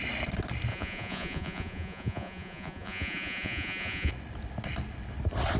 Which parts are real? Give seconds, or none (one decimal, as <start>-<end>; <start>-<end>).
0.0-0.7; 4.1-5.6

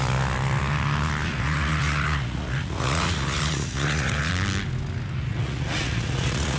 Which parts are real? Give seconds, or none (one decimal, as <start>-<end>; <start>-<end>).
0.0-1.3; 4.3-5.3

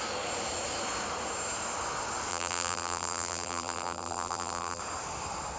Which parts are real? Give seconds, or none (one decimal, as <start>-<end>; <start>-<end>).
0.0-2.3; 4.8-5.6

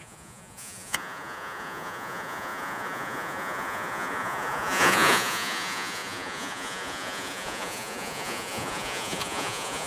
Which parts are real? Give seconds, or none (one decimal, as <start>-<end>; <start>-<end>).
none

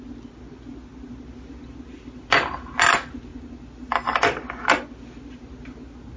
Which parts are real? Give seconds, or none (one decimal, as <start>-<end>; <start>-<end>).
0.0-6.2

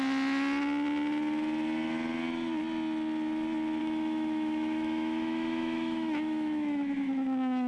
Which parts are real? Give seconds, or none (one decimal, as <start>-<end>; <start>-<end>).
0.0-3.8

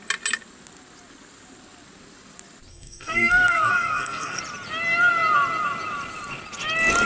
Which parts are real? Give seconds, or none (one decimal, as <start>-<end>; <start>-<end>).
0.0-2.7; 4.4-7.1